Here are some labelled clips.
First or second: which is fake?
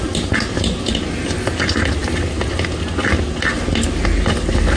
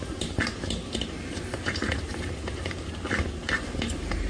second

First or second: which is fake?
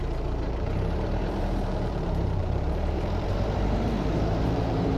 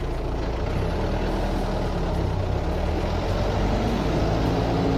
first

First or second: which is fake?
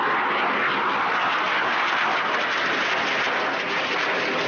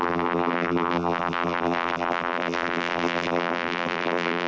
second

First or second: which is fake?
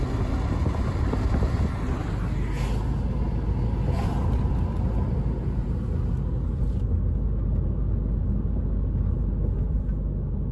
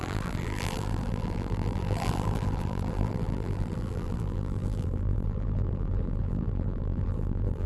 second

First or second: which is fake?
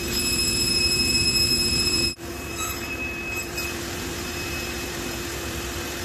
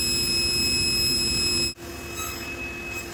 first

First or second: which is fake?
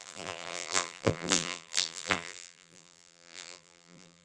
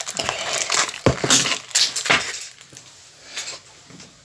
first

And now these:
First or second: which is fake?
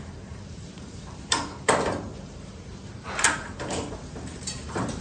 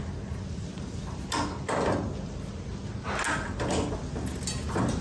first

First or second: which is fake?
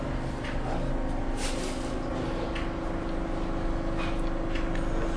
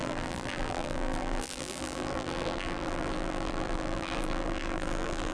second